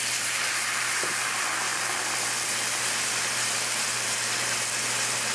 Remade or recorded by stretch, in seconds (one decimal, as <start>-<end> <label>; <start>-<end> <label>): 0.0-5.3 recorded